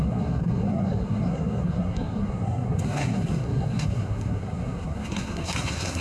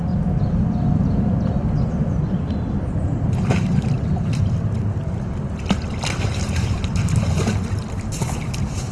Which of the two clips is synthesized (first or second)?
first